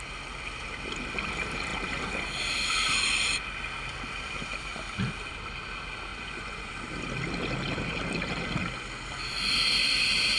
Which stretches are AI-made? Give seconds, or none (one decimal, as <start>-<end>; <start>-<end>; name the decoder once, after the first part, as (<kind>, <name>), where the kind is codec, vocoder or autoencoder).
6.1-6.7 (vocoder, Vocos)

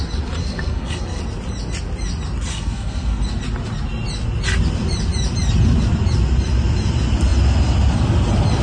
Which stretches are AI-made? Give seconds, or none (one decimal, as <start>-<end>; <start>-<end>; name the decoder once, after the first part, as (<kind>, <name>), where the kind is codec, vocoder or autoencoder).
0.4-1.2 (codec, SNAC); 2.5-3.2

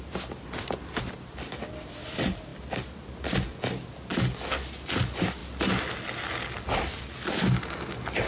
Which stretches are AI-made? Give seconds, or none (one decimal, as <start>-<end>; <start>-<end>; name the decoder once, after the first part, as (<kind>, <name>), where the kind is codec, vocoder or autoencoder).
none

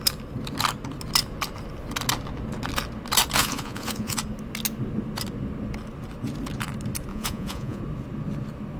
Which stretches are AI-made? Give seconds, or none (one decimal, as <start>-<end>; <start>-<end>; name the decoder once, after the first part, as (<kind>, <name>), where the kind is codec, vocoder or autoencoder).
3.4-4.2 (vocoder, Vocos); 7.1-7.8

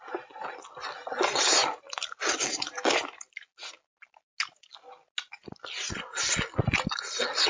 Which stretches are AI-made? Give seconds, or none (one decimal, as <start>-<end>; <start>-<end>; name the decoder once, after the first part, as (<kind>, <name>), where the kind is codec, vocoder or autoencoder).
none

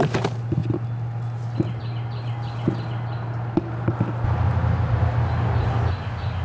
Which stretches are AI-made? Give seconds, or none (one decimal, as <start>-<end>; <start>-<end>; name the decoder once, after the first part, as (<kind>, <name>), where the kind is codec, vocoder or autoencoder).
none